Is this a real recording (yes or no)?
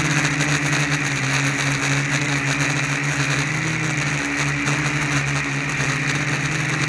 yes